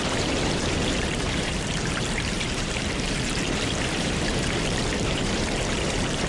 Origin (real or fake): fake